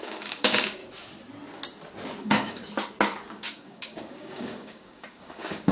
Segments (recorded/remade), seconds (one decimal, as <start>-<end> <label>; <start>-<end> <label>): 0.0-0.8 remade; 0.8-2.2 recorded; 2.2-2.6 remade; 2.6-3.3 recorded; 3.3-5.7 remade